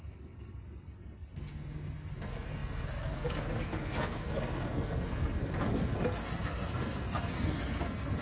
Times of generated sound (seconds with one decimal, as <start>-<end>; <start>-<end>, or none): 0.0-8.2

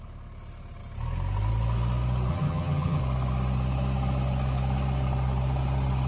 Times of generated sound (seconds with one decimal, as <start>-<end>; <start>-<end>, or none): 2.3-3.0

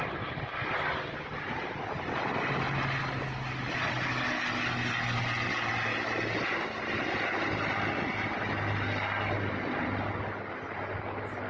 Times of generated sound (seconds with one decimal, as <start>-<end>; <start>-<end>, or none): none

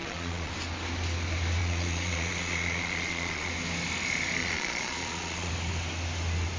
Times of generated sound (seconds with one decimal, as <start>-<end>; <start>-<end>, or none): 0.0-0.5; 1.6-3.5; 4.4-5.5

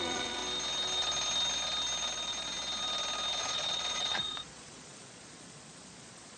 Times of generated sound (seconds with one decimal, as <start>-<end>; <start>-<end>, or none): 0.0-0.4; 3.4-6.4

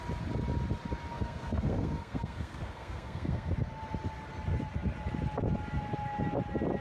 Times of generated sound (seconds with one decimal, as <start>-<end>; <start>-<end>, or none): 1.1-3.5